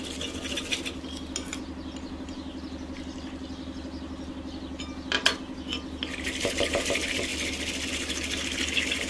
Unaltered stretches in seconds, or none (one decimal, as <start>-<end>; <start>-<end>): 0.0-9.1